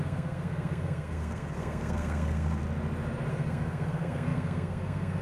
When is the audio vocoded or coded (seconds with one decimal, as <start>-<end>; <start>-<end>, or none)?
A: 0.0-2.6; 3.3-5.2